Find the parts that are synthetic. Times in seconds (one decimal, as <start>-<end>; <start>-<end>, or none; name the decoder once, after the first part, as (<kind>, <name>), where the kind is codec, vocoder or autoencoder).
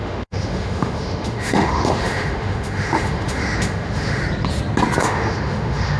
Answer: 0.0-4.2 (autoencoder, DAC-VAE); 5.0-6.0